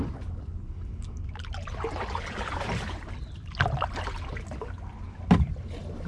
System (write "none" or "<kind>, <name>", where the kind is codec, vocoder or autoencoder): none